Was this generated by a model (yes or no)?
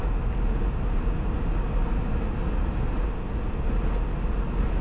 no